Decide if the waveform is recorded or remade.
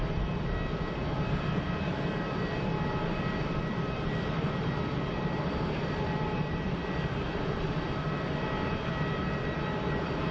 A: remade